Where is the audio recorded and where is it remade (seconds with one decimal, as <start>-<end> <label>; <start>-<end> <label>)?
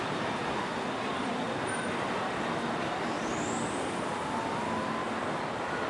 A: 0.0-5.9 recorded